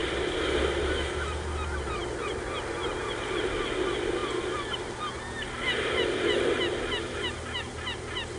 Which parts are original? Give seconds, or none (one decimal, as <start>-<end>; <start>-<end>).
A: 0.0-8.4